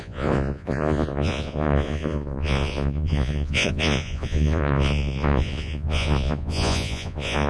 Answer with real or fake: fake